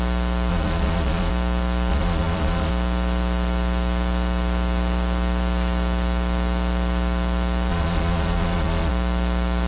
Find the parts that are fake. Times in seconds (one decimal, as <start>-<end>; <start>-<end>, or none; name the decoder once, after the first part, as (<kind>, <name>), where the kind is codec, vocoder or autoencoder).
0.5-1.3 (vocoder, Vocos); 1.9-2.7; 7.7-8.9

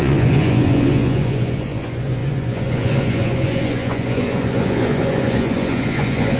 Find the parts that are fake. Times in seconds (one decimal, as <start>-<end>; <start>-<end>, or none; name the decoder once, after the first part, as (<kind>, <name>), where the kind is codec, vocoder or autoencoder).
0.0-6.4 (vocoder, Vocos)

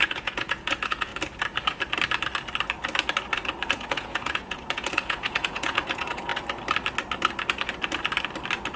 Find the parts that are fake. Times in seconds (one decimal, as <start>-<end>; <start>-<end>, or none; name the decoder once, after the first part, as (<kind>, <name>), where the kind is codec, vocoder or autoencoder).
0.0-1.1 (vocoder, Vocos); 3.7-6.3

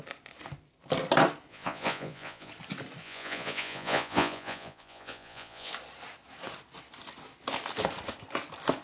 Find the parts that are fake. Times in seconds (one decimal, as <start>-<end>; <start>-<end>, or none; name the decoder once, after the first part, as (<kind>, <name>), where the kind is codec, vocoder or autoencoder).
1.5-2.5 (vocoder, Vocos); 3.0-5.7